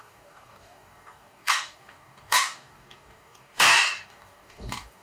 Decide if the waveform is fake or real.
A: fake